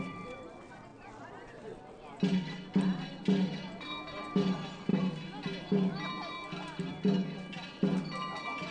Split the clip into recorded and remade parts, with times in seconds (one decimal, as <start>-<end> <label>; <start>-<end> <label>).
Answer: 0.0-0.9 recorded; 0.9-1.9 remade; 1.9-8.7 recorded